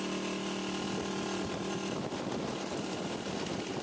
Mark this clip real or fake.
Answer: real